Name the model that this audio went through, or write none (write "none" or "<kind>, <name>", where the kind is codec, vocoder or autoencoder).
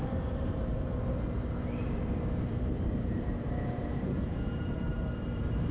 vocoder, BigVGAN v2